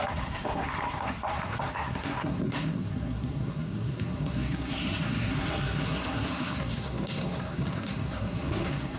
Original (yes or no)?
no